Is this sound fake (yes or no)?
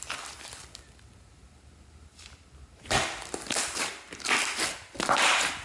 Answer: no